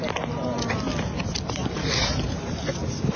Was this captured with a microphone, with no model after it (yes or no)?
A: yes